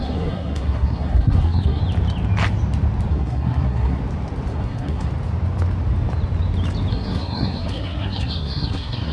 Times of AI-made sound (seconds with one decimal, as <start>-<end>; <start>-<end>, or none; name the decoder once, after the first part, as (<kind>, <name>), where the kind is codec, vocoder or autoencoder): 0.0-1.8 (codec, SNAC); 3.1-4.0; 4.5-5.1; 6.9-9.1